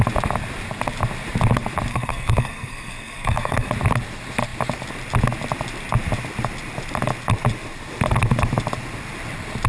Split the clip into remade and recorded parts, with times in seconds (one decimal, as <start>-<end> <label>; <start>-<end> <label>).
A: 0.0-1.9 recorded; 1.9-3.7 remade; 3.7-9.7 recorded